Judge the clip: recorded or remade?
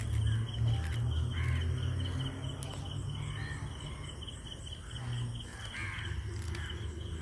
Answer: recorded